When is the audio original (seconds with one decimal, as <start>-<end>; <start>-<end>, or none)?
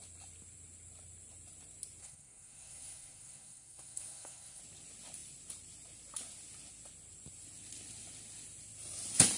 0.0-2.0; 4.6-9.4